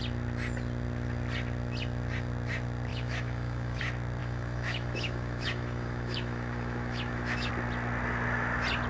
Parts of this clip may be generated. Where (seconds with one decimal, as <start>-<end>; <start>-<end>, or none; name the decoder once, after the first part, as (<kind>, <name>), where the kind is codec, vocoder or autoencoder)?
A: 2.9-3.8 (autoencoder, DAC-VAE); 4.2-7.5